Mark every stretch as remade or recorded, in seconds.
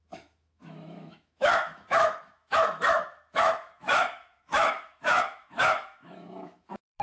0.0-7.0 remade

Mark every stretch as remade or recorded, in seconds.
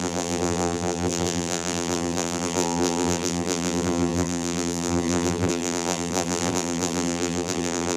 0.0-8.0 remade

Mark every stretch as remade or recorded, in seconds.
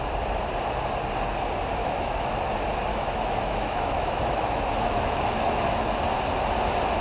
0.0-1.8 recorded; 1.8-2.3 remade; 2.3-2.9 recorded; 2.9-5.9 remade; 5.9-7.0 recorded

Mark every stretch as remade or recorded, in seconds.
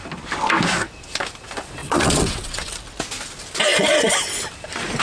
0.0-1.8 recorded; 1.8-2.7 remade; 2.7-5.0 recorded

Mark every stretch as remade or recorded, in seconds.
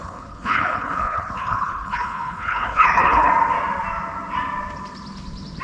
0.0-3.3 remade; 3.3-5.6 recorded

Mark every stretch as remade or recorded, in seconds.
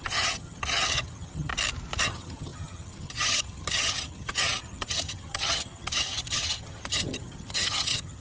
0.0-1.5 remade; 1.5-2.0 recorded; 2.0-8.2 remade